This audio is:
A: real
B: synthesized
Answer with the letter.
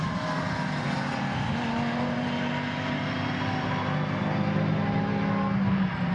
A